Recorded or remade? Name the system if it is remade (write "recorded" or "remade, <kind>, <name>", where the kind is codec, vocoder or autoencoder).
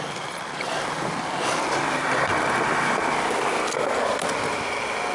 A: recorded